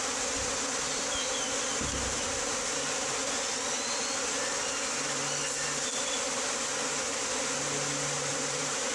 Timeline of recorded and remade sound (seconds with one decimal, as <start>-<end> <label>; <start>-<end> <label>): 0.0-8.3 recorded; 8.3-8.9 remade

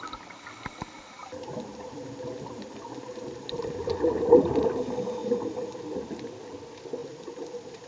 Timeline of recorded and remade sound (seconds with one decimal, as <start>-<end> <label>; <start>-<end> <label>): 0.0-1.2 recorded; 1.2-3.9 remade; 3.9-5.2 recorded; 5.2-5.8 remade; 5.8-7.0 recorded; 7.0-7.9 remade

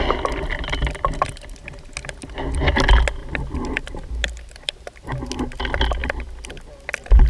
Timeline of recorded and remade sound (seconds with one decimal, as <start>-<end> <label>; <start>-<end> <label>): 0.0-3.2 recorded; 3.2-5.2 remade; 5.2-6.0 recorded; 6.0-6.7 remade; 6.7-7.3 recorded

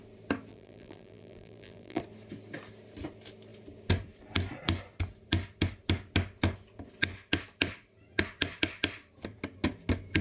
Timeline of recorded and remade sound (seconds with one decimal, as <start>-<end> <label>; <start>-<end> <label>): 0.0-0.5 recorded; 0.5-2.0 remade; 2.0-10.2 recorded

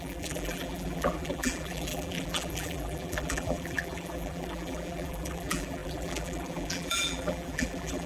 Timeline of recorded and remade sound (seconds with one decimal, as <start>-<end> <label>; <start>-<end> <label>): 0.0-8.1 remade